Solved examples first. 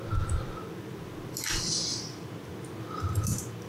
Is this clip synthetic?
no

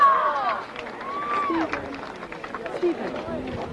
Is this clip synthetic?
no